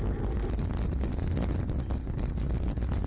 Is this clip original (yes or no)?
yes